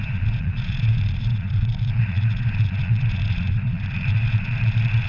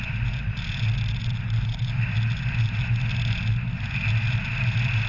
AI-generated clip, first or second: first